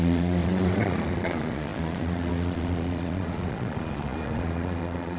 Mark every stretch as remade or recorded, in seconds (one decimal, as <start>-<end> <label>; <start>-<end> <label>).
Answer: 0.0-5.2 remade